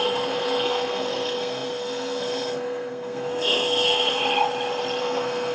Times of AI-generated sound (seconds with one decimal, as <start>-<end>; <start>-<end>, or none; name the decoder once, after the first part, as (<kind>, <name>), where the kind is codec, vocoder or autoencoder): 0.0-4.2 (codec, SNAC); 5.0-5.5